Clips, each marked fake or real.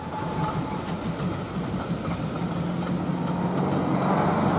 real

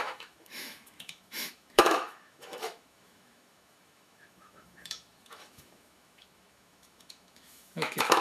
fake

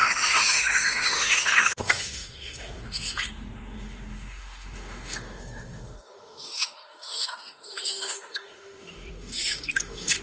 fake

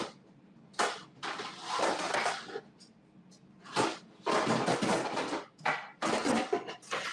real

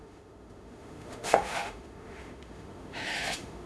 fake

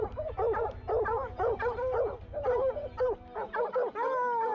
real